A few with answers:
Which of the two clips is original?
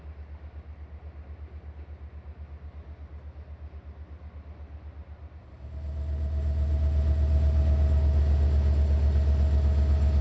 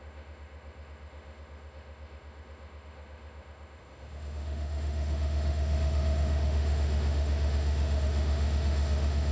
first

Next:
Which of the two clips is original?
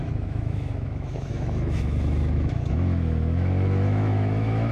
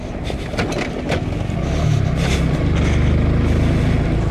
second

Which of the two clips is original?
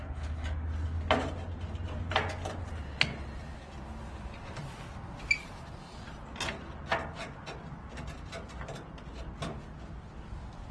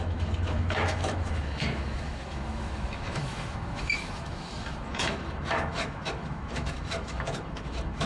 first